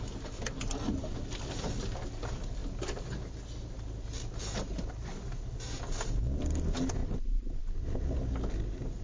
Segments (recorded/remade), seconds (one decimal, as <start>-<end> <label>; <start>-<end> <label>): 0.0-9.0 recorded